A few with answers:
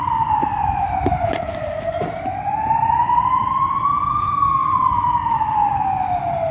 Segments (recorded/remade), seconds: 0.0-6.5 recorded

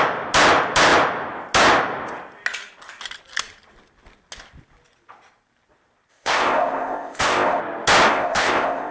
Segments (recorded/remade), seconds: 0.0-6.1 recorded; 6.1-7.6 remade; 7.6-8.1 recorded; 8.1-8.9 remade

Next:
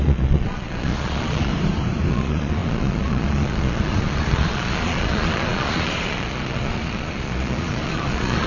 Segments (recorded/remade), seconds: 0.0-1.5 remade; 1.5-2.1 recorded; 2.1-8.5 remade

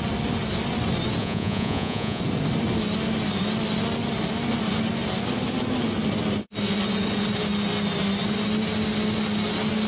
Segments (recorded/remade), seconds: 0.0-1.2 recorded; 1.2-2.2 remade; 2.2-9.9 recorded

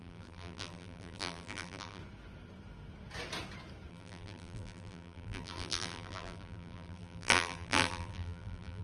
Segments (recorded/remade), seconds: 0.0-2.0 remade; 2.0-3.9 recorded; 3.9-8.8 remade

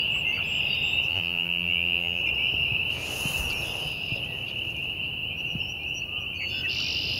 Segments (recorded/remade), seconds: 0.0-1.1 recorded; 1.1-2.2 remade; 2.2-7.2 recorded

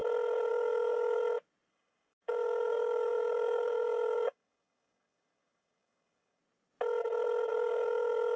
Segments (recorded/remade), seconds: 0.0-0.5 recorded; 0.5-1.2 remade; 1.2-1.7 recorded; 1.7-6.4 remade; 6.4-7.5 recorded; 7.5-8.4 remade

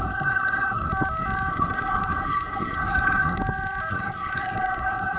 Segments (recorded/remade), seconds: 0.0-0.9 remade; 0.9-1.5 recorded; 1.5-3.4 remade; 3.4-3.9 recorded; 3.9-5.2 remade